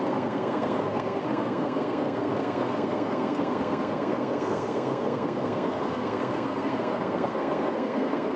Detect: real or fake fake